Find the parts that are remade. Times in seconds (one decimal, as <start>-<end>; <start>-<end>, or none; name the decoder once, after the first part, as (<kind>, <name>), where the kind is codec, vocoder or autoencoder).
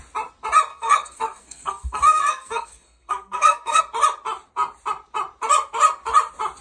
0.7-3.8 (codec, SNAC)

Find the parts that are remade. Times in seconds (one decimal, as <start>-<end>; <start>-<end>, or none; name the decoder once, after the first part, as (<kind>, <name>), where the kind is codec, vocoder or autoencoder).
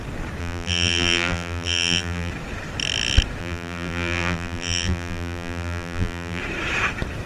0.4-2.3 (vocoder, BigVGAN v2); 3.4-6.4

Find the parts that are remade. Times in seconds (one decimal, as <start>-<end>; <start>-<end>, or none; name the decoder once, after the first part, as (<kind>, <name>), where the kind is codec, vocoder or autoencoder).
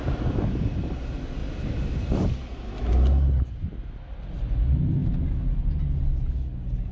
1.4-2.7 (vocoder, BigVGAN v2)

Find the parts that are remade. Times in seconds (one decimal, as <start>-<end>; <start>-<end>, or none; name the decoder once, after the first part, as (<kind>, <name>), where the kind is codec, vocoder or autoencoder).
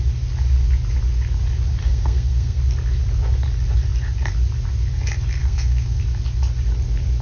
1.8-2.6 (codec, SNAC); 5.4-6.0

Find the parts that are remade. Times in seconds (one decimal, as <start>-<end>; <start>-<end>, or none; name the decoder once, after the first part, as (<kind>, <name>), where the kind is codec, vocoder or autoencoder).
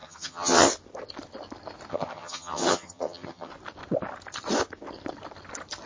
0.0-0.7 (vocoder, HiFi-GAN); 1.9-3.5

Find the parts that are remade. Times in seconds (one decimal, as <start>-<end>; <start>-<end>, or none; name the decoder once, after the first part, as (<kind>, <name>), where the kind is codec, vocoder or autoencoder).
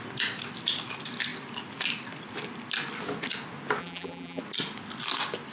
3.8-4.4 (vocoder, BigVGAN v2)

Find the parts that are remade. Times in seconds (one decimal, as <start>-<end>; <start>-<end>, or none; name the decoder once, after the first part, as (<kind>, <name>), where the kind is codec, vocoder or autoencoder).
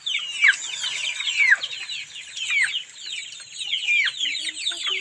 none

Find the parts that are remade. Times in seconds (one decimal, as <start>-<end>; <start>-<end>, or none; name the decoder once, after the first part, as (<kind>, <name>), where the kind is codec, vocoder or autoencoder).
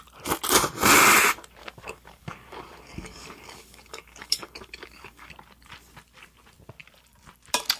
1.6-5.3 (codec, DAC)